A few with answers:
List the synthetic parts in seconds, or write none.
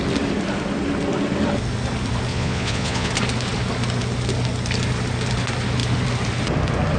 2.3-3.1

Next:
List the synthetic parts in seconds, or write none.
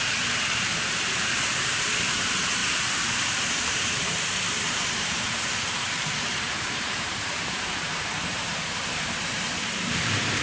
0.0-10.4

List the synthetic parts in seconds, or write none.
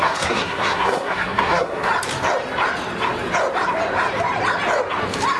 0.0-1.9